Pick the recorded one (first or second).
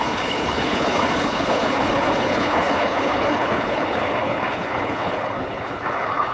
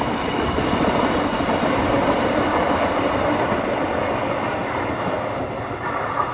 second